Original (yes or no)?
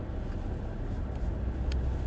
yes